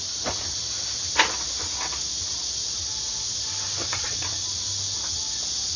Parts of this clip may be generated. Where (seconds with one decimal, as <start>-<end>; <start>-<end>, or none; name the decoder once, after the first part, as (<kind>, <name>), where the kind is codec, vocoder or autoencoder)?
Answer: 3.8-4.5 (vocoder, Vocos)